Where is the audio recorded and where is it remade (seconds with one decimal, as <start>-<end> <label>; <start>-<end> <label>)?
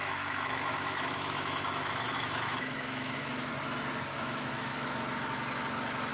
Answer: 0.0-3.5 remade; 3.5-4.1 recorded; 4.1-4.7 remade; 4.7-6.1 recorded